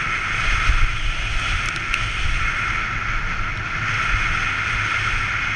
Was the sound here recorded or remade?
recorded